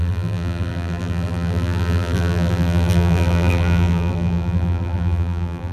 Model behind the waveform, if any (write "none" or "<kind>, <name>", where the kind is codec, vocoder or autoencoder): vocoder, BigVGAN v2